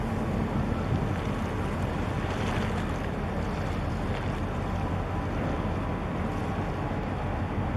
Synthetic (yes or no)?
no